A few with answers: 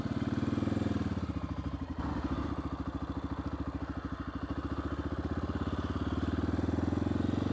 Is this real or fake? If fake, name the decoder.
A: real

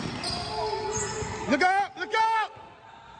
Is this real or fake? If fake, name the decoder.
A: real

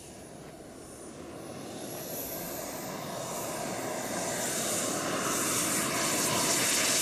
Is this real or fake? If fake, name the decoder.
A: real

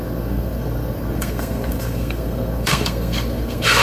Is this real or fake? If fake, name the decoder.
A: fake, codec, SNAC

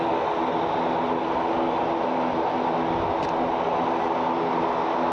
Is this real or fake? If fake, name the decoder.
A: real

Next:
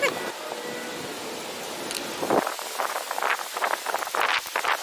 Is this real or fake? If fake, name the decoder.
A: real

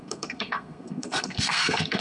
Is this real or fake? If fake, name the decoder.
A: fake, codec, SNAC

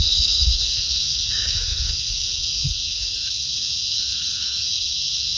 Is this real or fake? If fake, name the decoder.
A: fake, codec, SNAC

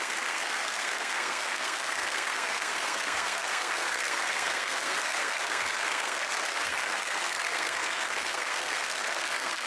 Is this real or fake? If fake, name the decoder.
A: fake, codec, SNAC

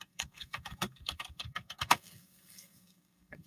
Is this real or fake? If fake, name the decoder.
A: fake, codec, SNAC